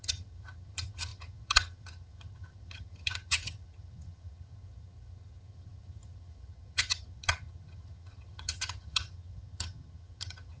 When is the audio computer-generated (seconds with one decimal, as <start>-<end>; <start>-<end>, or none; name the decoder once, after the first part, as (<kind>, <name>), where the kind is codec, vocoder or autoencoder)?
0.0-10.6 (vocoder, HiFi-GAN)